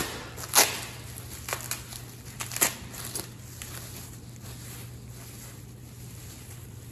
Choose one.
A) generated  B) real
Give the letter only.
B